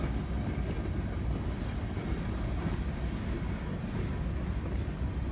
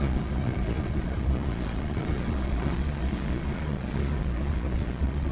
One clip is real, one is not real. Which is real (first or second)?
first